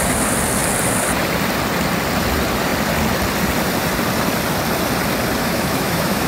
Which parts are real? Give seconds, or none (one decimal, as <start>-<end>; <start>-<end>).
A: 0.0-5.4